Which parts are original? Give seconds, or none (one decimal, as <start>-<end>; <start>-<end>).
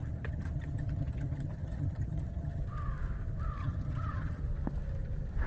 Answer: 2.6-3.6; 4.4-5.5